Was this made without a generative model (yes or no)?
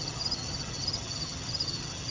no